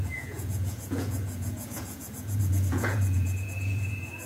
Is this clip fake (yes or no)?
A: yes